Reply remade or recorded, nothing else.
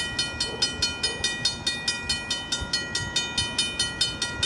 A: recorded